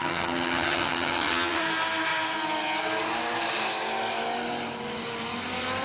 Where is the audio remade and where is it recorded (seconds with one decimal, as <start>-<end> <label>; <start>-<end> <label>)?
0.0-1.6 remade; 1.6-5.8 recorded